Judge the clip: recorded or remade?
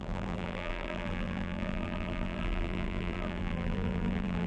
remade